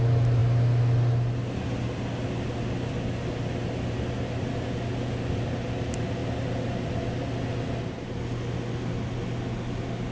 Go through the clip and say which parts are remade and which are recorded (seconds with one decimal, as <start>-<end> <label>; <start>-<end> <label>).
0.0-10.1 recorded